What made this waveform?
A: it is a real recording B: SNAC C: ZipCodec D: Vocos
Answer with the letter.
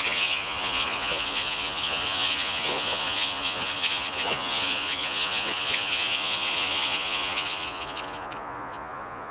D